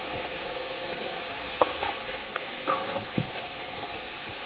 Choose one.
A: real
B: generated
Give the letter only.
B